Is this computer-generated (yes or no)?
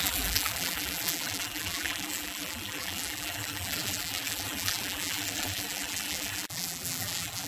yes